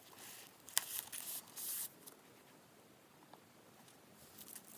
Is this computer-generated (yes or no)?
no